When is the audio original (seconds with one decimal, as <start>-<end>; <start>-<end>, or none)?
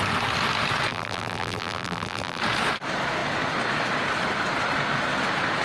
0.0-0.9; 2.4-5.6